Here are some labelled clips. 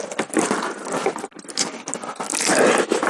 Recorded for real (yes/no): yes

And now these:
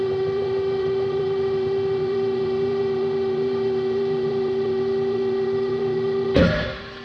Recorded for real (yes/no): no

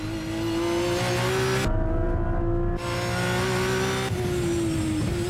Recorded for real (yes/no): yes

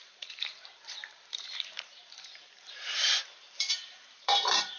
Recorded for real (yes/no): no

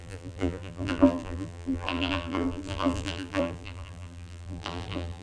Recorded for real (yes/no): no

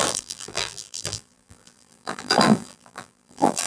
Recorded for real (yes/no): no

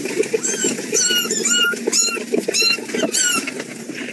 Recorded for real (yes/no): no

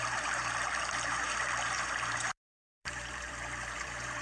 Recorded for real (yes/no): no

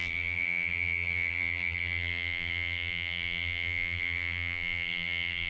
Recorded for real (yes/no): no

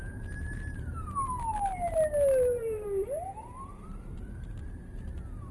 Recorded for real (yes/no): no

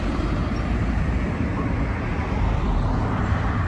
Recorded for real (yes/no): no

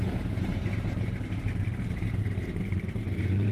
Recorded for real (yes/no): no